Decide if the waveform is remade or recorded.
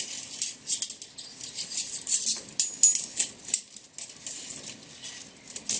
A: recorded